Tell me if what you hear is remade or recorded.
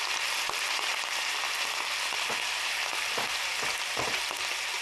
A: recorded